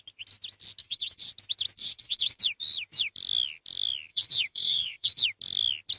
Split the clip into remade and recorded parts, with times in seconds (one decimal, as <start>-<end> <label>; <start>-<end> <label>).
0.0-0.8 recorded; 0.8-1.3 remade; 1.3-1.8 recorded; 1.8-2.4 remade; 2.4-4.1 recorded; 4.1-5.2 remade; 5.2-6.0 recorded